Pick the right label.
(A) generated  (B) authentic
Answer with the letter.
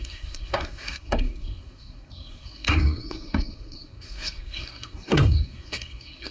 A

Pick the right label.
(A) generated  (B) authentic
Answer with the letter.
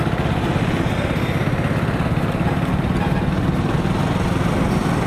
B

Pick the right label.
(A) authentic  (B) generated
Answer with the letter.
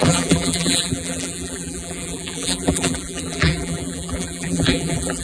B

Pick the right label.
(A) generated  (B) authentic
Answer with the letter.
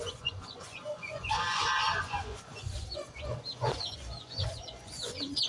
A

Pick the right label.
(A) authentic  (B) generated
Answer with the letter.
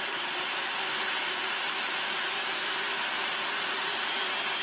B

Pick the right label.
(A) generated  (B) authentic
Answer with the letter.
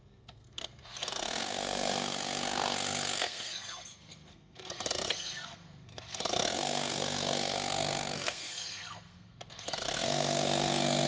A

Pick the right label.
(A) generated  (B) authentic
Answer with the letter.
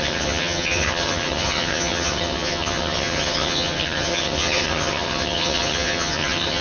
A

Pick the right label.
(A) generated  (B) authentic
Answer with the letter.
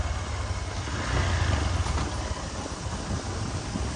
B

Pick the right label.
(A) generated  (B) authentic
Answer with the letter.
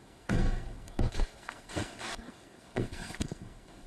A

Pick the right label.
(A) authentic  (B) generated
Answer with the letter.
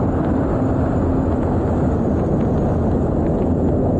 A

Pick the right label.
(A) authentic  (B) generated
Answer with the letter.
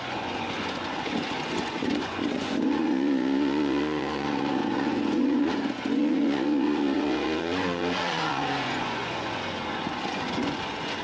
B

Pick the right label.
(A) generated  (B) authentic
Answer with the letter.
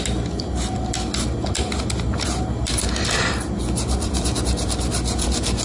B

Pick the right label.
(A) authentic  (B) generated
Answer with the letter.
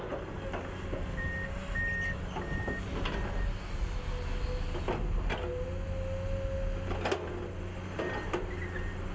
A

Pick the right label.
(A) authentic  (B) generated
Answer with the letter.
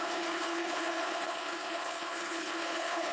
B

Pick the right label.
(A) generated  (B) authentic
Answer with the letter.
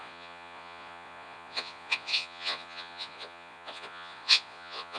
A